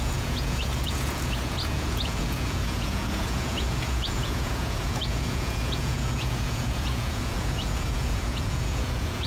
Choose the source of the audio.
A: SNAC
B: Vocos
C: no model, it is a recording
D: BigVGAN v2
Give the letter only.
B